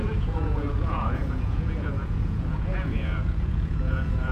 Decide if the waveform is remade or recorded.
remade